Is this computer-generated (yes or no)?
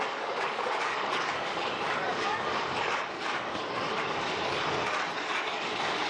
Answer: yes